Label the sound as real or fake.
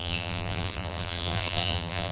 fake